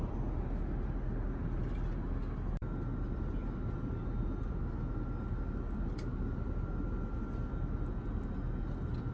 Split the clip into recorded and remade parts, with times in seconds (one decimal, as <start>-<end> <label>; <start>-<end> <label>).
0.0-9.1 recorded